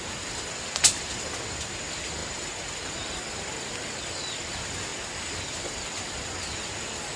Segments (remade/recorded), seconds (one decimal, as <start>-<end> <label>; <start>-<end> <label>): 0.0-7.2 recorded